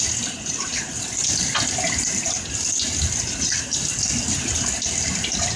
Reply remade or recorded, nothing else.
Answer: recorded